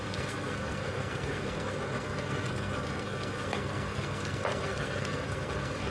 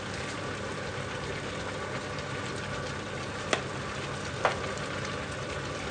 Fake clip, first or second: first